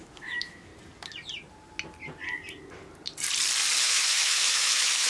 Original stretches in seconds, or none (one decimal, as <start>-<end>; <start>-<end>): 0.7-3.8